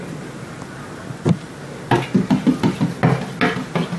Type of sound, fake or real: real